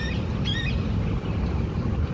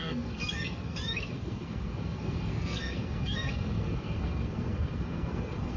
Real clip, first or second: first